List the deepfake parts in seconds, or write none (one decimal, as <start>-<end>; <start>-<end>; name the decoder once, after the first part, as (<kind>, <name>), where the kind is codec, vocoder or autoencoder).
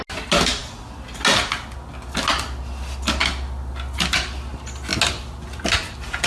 none